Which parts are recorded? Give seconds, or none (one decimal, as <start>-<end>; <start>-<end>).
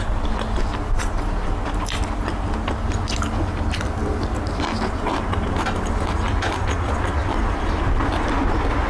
0.0-8.9